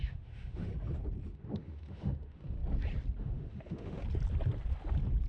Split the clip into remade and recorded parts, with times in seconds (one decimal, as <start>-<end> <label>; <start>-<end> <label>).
0.0-0.7 remade; 0.7-1.3 recorded; 1.3-2.6 remade; 2.6-3.2 recorded; 3.2-4.0 remade; 4.0-5.3 recorded